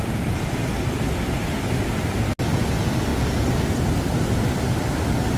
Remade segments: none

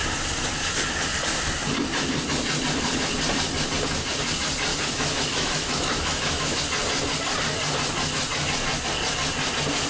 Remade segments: 4.7-6.6 (autoencoder, DAC-VAE)

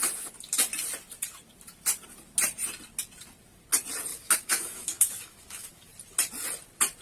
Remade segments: 4.1-5.9 (autoencoder, DAC-VAE)

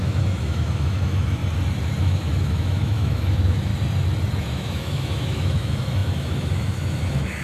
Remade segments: 0.0-1.4 (autoencoder, DAC-VAE); 2.0-3.7; 4.4-7.4

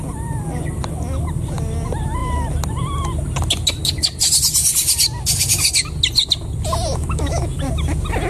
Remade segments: 6.9-7.6 (autoencoder, DAC-VAE)

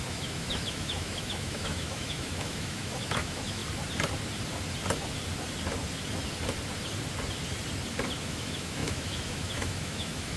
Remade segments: 0.0-3.6 (autoencoder, DAC-VAE); 8.2-10.4

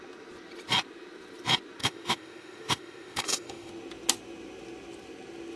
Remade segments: 1.8-3.7 (autoencoder, DAC-VAE)

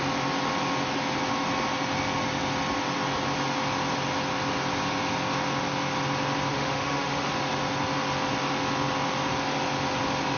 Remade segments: 6.5-7.3 (autoencoder, DAC-VAE)